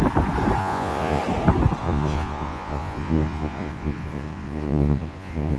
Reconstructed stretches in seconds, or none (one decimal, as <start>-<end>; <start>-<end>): 0.6-1.2; 1.8-5.6